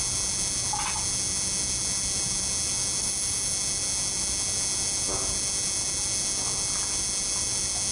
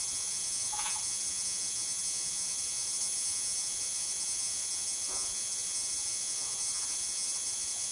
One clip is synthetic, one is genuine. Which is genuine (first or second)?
first